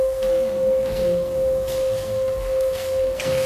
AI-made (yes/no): yes